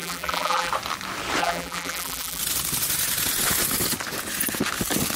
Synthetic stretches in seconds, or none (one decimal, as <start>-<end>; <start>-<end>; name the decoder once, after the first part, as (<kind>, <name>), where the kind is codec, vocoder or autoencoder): 0.0-0.7 (vocoder, BigVGAN v2); 1.4-2.4